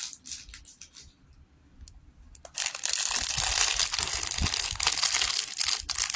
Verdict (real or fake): real